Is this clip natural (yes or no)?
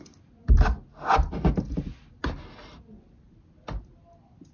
yes